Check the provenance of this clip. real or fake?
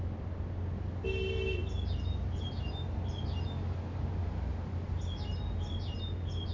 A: real